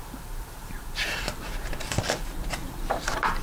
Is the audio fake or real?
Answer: fake